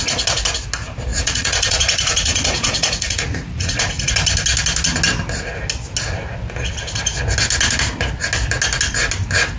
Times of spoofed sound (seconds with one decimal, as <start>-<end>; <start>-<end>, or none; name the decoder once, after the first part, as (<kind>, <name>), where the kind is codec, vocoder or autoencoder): 1.1-4.1 (vocoder, Vocos)